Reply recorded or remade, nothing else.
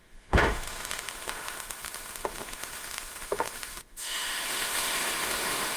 remade